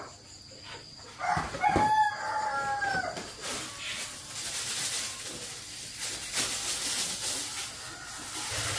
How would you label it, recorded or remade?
recorded